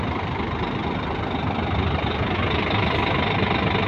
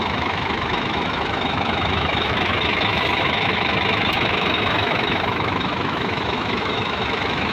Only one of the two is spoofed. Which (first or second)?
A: second